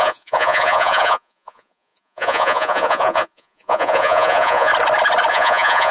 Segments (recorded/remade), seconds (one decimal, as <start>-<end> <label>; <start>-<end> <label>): 0.0-4.7 remade; 4.7-5.3 recorded; 5.3-5.9 remade